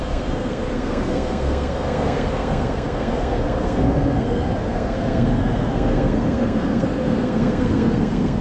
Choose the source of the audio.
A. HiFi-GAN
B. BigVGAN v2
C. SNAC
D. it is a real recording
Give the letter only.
C